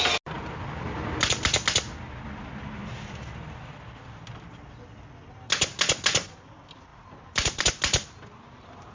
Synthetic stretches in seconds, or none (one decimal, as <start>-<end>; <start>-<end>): none